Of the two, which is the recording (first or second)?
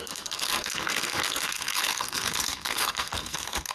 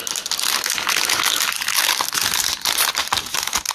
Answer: second